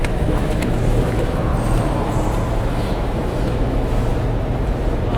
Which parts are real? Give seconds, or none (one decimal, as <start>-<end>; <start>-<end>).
1.5-2.6; 4.1-5.2